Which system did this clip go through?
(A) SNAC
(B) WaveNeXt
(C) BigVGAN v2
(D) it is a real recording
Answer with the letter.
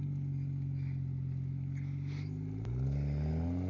D